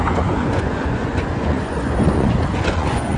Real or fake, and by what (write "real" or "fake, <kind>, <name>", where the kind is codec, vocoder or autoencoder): fake, vocoder, Vocos